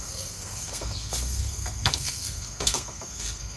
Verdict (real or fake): fake